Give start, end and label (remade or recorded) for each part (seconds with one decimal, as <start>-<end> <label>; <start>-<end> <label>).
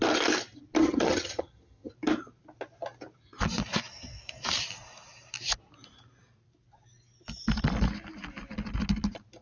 0.0-0.8 recorded; 0.8-1.9 remade; 1.9-9.4 recorded